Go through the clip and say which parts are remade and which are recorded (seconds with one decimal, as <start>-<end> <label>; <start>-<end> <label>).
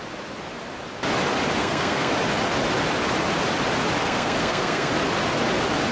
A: 0.0-1.6 recorded; 1.6-2.1 remade; 2.1-4.0 recorded; 4.0-4.9 remade; 4.9-5.9 recorded